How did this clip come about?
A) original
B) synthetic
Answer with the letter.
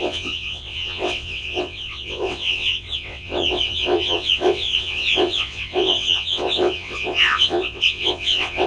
B